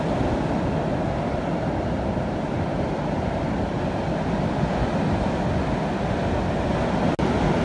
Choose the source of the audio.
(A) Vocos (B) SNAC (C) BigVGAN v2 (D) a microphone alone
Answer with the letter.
D